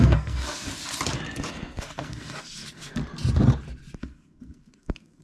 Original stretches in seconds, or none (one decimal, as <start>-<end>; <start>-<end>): 0.8-1.5; 3.0-4.0